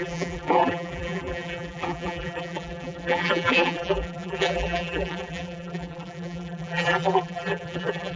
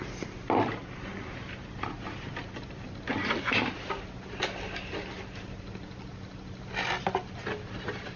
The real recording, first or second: second